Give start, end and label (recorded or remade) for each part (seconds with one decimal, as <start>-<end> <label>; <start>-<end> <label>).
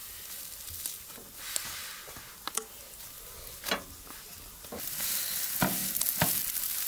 0.0-4.1 recorded; 4.1-5.8 remade; 5.8-6.9 recorded